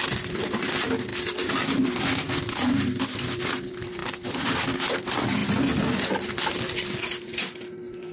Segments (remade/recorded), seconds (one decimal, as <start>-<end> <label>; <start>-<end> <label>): 0.0-8.1 recorded